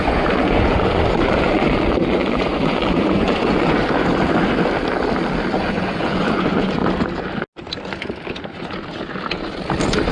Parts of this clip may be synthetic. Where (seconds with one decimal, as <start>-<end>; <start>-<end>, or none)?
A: 0.0-3.8; 5.5-6.8